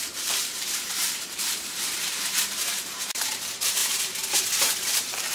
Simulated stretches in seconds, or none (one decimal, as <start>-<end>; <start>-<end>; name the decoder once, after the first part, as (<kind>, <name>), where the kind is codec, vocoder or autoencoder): 0.0-3.8 (vocoder, BigVGAN v2); 4.6-5.3